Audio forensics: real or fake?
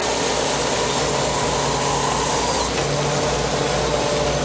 real